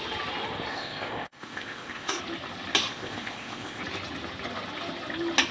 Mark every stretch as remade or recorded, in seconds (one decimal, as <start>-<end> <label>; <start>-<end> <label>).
0.0-0.7 recorded; 0.7-2.2 remade; 2.2-2.9 recorded; 2.9-3.8 remade; 3.8-5.5 recorded